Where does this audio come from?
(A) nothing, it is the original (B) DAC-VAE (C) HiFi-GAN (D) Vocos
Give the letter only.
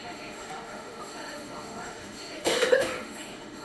B